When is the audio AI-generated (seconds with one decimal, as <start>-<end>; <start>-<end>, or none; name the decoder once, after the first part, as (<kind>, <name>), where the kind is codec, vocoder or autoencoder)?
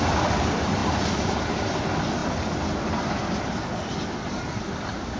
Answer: none